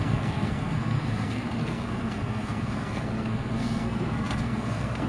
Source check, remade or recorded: remade